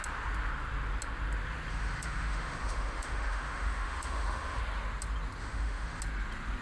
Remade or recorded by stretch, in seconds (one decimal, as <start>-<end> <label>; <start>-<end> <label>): 0.0-1.7 recorded; 1.7-4.6 remade; 4.6-5.4 recorded; 5.4-6.0 remade; 6.0-6.6 recorded